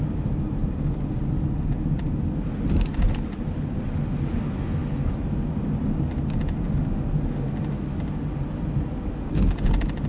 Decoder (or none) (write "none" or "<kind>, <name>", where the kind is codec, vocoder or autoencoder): none